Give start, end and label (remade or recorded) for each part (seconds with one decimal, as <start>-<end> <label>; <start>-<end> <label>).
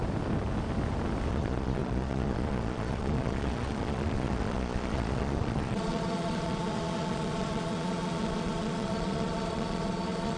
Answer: 0.0-1.3 recorded; 1.3-10.4 remade